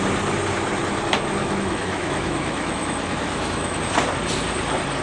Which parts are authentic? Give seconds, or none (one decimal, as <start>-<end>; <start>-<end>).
0.0-1.4; 3.8-5.0